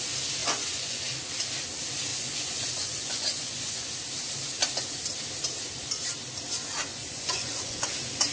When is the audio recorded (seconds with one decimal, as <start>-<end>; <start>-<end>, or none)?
0.0-0.4; 1.0-2.1; 3.9-6.9; 7.9-8.3